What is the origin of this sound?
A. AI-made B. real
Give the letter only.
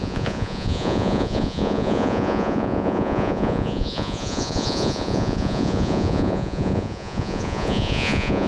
A